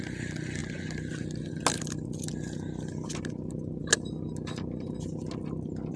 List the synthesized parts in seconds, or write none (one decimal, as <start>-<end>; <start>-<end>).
none